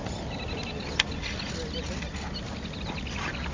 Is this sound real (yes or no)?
yes